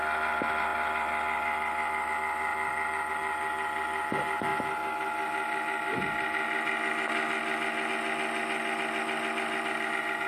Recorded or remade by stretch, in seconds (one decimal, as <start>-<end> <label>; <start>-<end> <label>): 0.0-0.7 recorded; 0.7-2.1 remade; 2.1-2.5 recorded; 2.5-3.1 remade; 3.1-4.5 recorded; 4.5-7.9 remade; 7.9-8.4 recorded; 8.4-9.9 remade; 9.9-10.3 recorded